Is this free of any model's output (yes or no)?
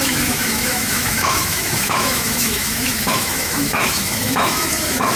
no